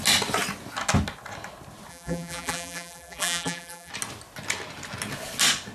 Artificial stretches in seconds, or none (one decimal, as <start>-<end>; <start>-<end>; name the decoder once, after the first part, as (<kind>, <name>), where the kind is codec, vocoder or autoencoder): 1.9-3.9 (vocoder, BigVGAN v2)